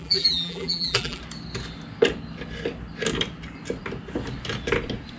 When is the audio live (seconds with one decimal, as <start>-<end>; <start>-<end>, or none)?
1.2-5.2